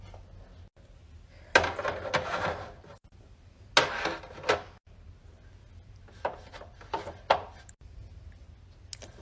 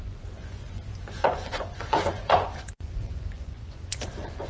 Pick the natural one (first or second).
first